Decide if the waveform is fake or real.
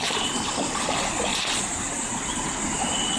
real